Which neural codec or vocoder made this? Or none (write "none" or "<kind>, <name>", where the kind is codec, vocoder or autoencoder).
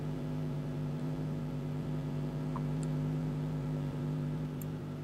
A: vocoder, BigVGAN v2